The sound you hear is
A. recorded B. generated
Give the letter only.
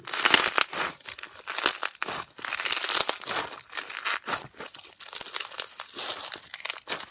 A